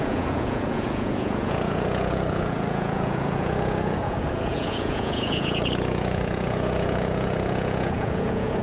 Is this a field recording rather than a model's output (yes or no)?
no